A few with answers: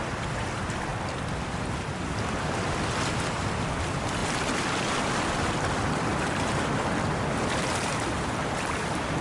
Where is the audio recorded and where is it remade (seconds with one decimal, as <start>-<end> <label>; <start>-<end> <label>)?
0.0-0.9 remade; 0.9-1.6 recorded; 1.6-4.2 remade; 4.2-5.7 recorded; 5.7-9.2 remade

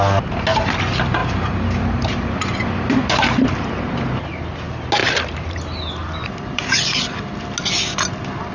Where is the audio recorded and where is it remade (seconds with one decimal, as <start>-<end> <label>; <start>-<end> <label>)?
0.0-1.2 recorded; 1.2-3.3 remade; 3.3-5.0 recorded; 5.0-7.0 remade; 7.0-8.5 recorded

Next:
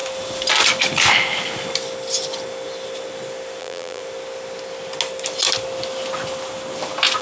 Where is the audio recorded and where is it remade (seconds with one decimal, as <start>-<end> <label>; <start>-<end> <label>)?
0.0-3.6 recorded; 3.6-4.0 remade; 4.0-7.2 recorded

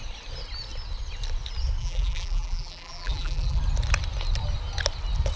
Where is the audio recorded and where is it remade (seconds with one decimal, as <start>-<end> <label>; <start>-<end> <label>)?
0.0-1.8 recorded; 1.8-3.6 remade; 3.6-5.4 recorded